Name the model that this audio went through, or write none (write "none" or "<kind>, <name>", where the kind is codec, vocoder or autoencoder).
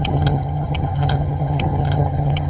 vocoder, HiFi-GAN